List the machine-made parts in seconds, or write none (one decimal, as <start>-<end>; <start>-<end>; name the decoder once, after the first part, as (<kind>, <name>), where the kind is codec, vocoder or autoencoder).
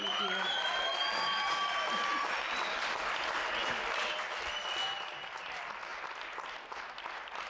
none